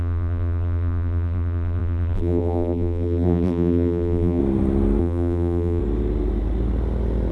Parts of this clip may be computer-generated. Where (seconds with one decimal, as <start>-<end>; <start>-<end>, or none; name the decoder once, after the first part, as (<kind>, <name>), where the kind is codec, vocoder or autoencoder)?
0.0-4.4 (vocoder, BigVGAN v2); 5.0-5.8